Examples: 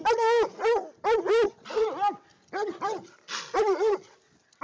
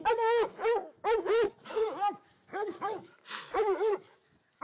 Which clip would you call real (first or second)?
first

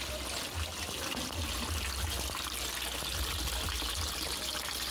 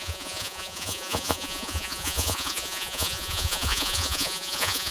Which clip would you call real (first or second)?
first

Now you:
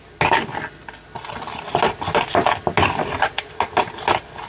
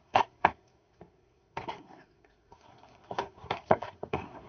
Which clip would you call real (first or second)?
first